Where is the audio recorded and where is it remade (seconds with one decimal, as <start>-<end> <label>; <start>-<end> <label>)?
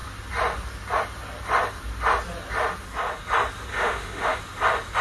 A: 0.0-3.7 recorded; 3.7-4.4 remade; 4.4-5.0 recorded